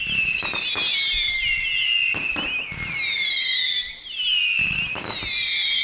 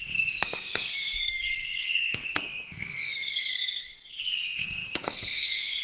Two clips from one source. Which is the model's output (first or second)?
second